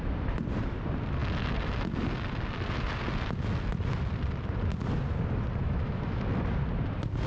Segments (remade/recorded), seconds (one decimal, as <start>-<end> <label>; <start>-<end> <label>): 0.0-5.6 recorded; 5.6-6.2 remade; 6.2-7.3 recorded